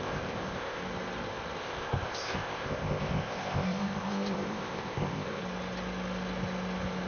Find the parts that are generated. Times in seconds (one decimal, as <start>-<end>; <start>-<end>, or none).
0.0-0.8; 1.6-5.4